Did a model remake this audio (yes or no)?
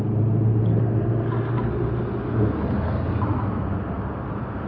no